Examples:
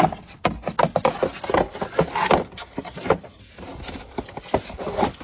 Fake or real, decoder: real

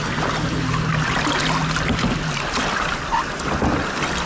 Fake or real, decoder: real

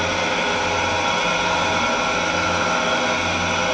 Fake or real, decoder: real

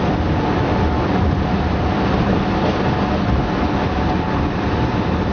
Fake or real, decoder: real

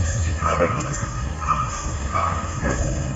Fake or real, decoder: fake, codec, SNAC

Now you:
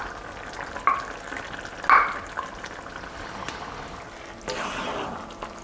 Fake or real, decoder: real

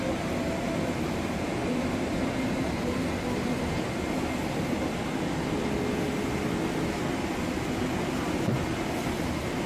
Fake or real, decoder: real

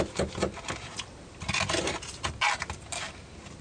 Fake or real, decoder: real